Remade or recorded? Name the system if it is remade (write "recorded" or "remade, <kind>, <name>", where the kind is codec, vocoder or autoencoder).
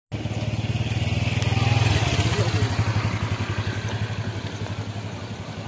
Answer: recorded